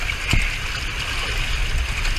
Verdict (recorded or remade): recorded